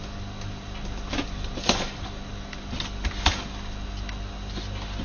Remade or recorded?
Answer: recorded